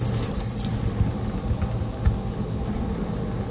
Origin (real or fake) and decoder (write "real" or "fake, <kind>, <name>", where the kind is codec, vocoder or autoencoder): real